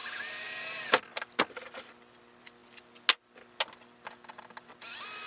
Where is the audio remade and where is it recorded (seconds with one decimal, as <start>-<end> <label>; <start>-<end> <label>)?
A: 0.0-5.3 recorded